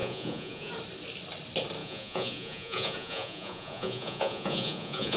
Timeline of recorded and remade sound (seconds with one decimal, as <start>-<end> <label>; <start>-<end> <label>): 0.0-0.7 remade; 0.7-1.8 recorded; 1.8-5.2 remade